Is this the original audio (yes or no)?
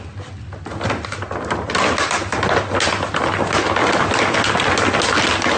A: yes